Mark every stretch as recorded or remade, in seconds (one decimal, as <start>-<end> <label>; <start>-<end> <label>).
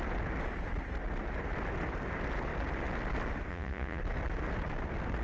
0.0-3.5 recorded; 3.5-4.0 remade; 4.0-5.2 recorded